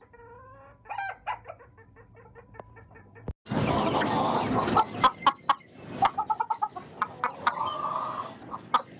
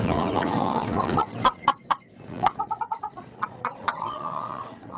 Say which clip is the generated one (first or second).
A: second